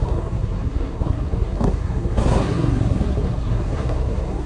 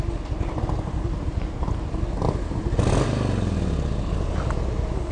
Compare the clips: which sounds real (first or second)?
second